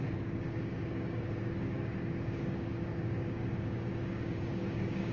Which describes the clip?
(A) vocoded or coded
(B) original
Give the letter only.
A